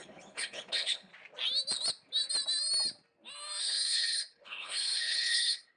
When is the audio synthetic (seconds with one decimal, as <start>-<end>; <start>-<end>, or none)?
0.0-1.1; 3.6-5.8